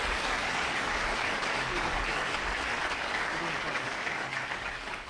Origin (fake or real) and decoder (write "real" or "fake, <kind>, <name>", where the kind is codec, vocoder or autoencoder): fake, codec, DAC